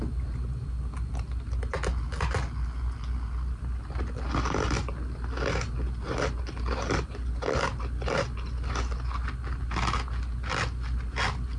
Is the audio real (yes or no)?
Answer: yes